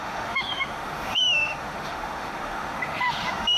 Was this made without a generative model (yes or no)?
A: no